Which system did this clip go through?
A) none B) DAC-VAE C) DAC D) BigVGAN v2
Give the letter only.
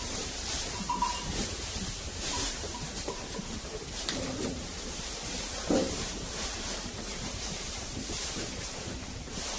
D